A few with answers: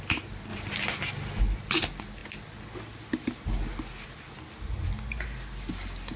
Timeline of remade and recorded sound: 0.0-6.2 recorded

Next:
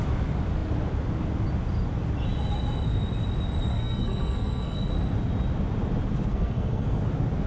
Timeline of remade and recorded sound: 0.0-3.7 recorded; 3.7-4.9 remade; 4.9-6.3 recorded; 6.3-7.0 remade; 7.0-7.5 recorded

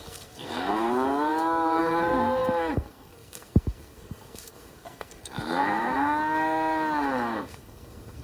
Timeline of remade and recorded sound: 0.0-8.2 remade

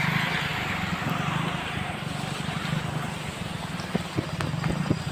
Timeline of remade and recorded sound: 0.0-5.1 recorded